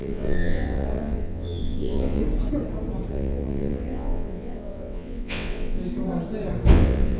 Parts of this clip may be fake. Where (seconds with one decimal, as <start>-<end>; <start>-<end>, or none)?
0.0-2.2; 3.1-5.8; 6.7-7.2